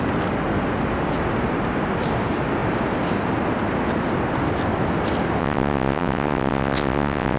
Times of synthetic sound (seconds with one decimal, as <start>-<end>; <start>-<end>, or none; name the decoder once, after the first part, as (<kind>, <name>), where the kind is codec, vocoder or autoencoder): 5.4-7.4 (vocoder, WaveNeXt)